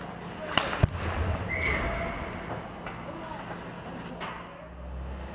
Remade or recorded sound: recorded